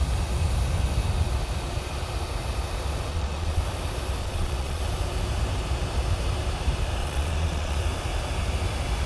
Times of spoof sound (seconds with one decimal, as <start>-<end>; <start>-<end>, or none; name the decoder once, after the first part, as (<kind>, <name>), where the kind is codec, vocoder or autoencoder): 3.1-3.6 (vocoder, Vocos); 4.2-4.8; 7.0-7.8